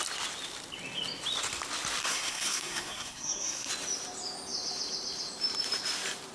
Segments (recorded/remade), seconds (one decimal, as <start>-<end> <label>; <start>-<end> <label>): 0.0-2.0 recorded; 2.0-3.7 remade; 3.7-6.3 recorded